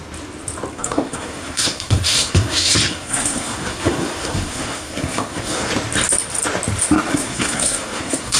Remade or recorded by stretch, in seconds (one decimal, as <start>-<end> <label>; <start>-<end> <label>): 0.0-0.7 recorded; 0.7-5.7 remade; 5.7-7.1 recorded; 7.1-8.4 remade